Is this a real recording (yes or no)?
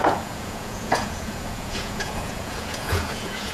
no